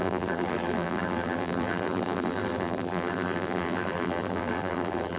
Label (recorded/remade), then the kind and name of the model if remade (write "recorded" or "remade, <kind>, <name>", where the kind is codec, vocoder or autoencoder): remade, vocoder, BigVGAN v2